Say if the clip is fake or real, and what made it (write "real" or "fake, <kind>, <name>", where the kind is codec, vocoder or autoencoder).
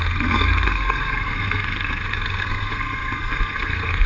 fake, codec, SNAC